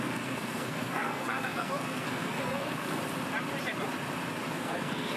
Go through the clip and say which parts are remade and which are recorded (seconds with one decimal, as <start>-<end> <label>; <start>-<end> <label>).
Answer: 0.0-3.0 remade; 3.0-4.5 recorded; 4.5-5.2 remade